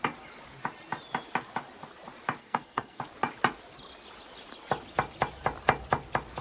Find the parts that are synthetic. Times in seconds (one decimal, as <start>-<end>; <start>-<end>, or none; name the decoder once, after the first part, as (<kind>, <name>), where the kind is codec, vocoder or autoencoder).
2.4-3.0 (codec, SNAC)